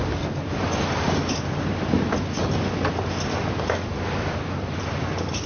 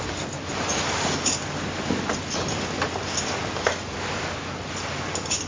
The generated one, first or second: first